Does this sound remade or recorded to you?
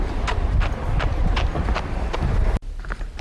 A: recorded